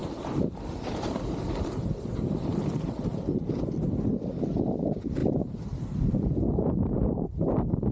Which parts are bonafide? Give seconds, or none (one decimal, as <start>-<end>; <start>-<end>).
1.2-5.2